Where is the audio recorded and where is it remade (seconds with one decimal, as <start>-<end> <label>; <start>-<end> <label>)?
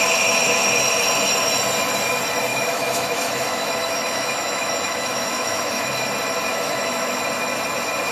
0.0-2.5 recorded; 2.5-5.9 remade; 5.9-6.5 recorded; 6.5-7.2 remade; 7.2-8.1 recorded